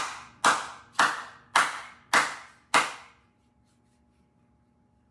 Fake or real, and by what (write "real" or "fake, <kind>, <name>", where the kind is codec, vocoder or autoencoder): real